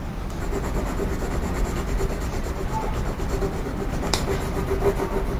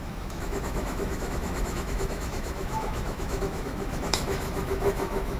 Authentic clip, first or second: first